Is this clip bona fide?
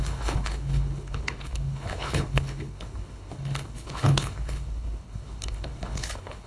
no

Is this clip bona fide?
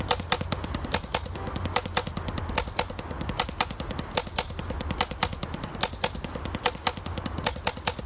yes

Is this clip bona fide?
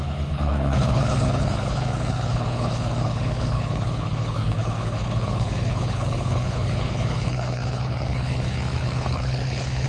no